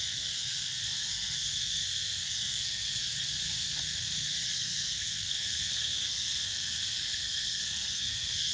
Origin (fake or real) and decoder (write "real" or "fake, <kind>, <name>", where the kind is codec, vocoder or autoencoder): fake, codec, SNAC